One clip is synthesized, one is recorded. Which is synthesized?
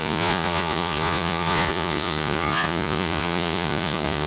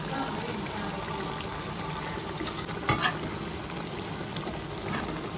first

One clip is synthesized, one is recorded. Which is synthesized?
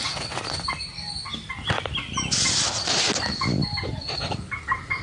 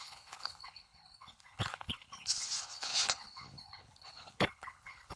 second